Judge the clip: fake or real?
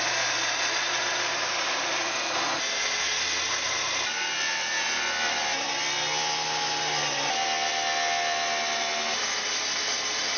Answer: real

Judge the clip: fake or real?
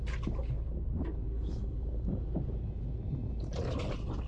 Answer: real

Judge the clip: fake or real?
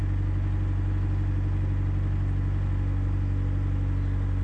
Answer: real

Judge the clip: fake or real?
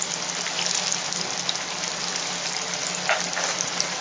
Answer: real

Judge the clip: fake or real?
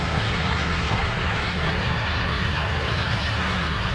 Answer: fake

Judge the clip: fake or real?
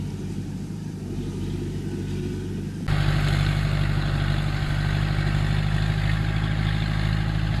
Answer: real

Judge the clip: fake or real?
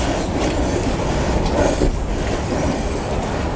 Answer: real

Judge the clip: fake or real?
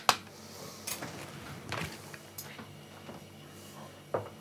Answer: real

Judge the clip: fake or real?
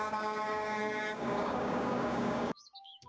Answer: fake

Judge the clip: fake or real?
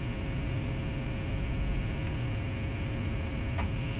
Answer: real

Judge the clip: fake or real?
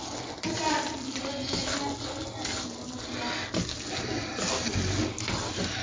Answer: real